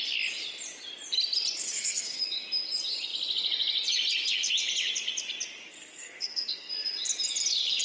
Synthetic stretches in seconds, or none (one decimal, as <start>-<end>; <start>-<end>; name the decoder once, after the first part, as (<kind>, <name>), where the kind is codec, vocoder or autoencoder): 1.6-2.2 (codec, SNAC); 5.7-6.7